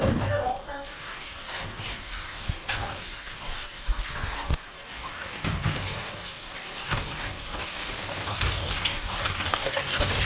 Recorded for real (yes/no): no